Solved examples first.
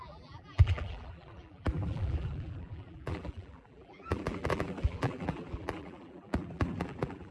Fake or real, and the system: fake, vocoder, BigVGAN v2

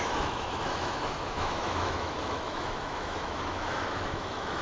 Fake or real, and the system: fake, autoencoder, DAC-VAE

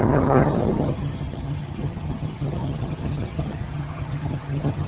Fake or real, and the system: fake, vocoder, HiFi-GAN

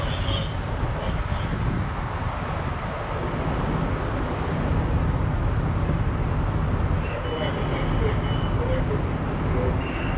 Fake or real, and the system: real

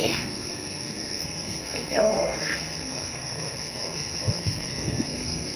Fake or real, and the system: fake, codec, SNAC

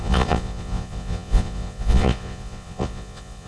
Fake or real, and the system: fake, vocoder, Vocos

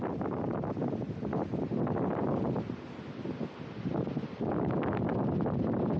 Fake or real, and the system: real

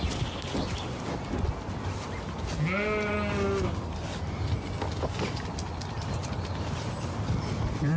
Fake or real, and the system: real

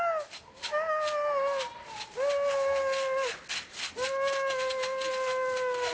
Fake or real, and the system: real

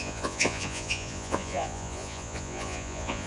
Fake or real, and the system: fake, vocoder, Vocos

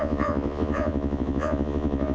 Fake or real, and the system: fake, vocoder, Vocos